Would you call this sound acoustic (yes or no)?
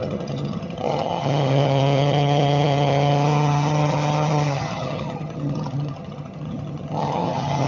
no